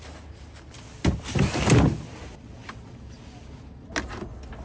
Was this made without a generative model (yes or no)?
yes